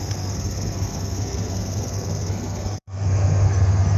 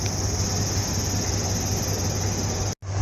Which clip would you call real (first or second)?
second